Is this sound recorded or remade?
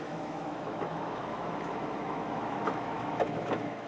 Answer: remade